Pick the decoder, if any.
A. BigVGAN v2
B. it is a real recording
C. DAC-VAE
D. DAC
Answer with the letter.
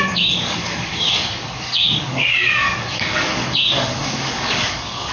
D